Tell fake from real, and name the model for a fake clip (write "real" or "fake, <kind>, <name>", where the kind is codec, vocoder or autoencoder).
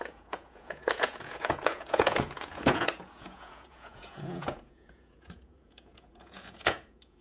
fake, vocoder, Vocos